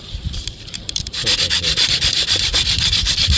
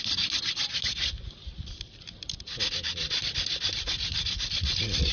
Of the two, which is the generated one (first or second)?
first